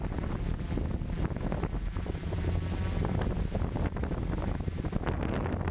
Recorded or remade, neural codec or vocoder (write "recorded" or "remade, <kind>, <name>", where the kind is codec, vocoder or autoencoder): recorded